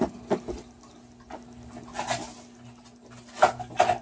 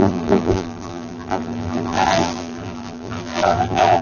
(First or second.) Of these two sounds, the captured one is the first